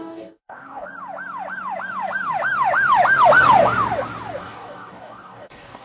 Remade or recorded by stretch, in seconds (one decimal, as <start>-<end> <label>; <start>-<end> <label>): 0.0-0.9 remade; 0.9-4.4 recorded; 4.4-5.8 remade